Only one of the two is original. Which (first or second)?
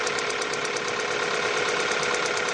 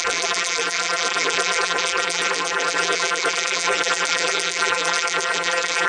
first